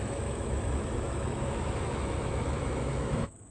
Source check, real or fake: fake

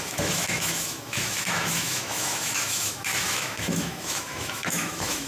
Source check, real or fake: fake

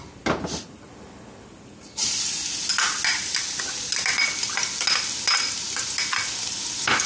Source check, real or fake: real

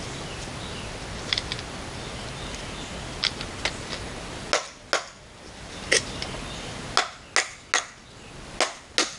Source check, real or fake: real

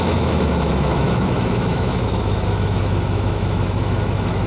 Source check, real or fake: fake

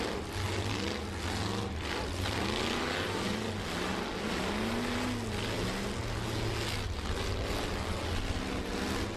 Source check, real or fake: real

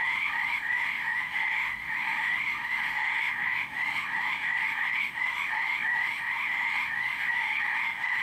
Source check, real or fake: fake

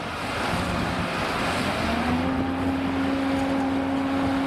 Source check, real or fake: real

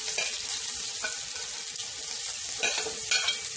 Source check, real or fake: real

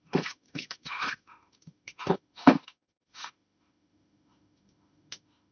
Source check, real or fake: fake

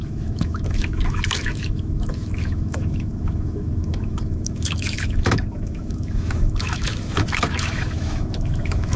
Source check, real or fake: fake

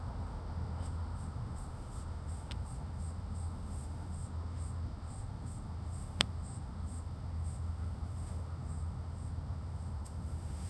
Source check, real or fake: fake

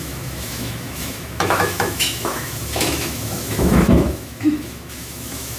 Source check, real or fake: fake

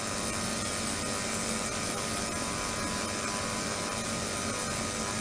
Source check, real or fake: real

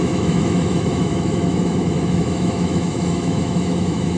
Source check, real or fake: fake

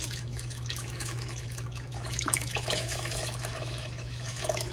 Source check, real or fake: fake